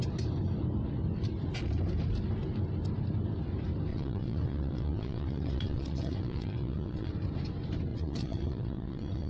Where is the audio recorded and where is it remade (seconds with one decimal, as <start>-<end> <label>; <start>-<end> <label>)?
0.0-3.9 recorded; 3.9-7.1 remade; 7.1-7.9 recorded; 7.9-9.3 remade